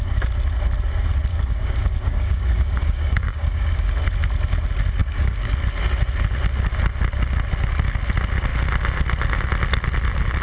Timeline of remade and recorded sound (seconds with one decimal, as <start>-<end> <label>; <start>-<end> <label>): 0.0-1.3 recorded; 1.3-4.0 remade; 4.0-5.0 recorded; 5.0-5.5 remade; 5.5-10.4 recorded